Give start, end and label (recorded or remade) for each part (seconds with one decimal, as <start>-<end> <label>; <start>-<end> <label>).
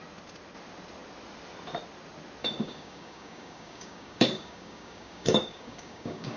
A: 0.0-2.4 recorded; 2.4-6.4 remade